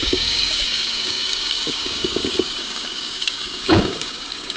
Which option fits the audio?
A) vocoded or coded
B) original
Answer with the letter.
A